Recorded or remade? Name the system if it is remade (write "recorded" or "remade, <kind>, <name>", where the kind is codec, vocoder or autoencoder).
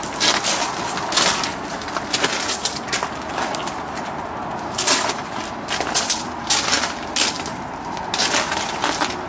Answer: recorded